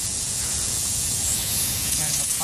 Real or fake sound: fake